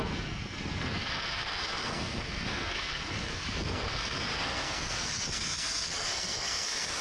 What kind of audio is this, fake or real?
fake